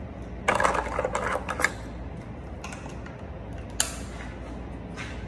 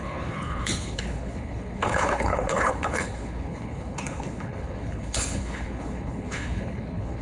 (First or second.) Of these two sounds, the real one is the first